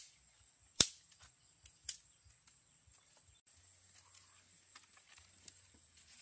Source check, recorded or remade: recorded